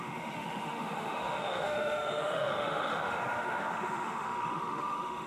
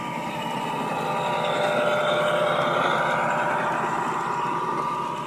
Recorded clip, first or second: second